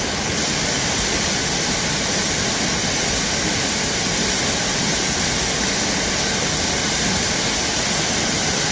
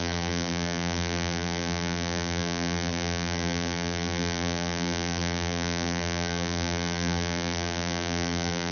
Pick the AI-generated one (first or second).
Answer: second